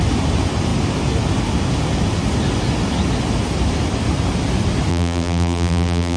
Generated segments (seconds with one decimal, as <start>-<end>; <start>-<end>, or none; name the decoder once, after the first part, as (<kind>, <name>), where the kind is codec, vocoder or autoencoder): 4.9-6.2 (vocoder, BigVGAN v2)